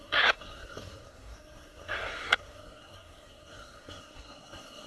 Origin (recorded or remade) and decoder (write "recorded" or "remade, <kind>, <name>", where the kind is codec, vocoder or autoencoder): remade, codec, SNAC